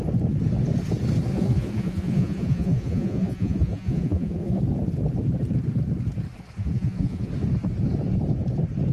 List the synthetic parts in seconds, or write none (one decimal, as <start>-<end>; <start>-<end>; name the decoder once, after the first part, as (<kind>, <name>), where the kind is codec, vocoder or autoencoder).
1.3-4.6 (vocoder, Vocos); 6.6-7.3